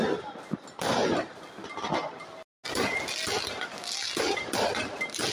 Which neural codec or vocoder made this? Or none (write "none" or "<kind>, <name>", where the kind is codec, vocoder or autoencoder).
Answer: none